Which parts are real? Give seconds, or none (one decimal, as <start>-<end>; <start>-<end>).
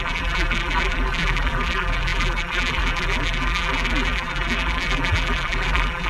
none